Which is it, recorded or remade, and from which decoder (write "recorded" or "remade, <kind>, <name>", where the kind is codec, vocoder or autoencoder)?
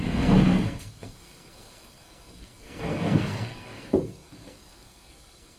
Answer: remade, codec, SNAC